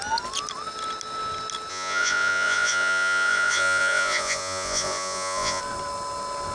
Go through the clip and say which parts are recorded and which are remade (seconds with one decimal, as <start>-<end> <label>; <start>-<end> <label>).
0.0-1.7 recorded; 1.7-5.6 remade; 5.6-6.5 recorded